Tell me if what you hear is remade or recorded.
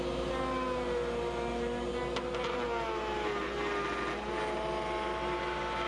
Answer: recorded